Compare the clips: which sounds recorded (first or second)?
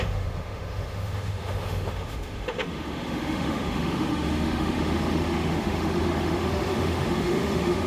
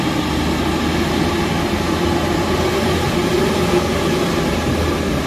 second